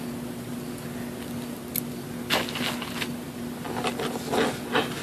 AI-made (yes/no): no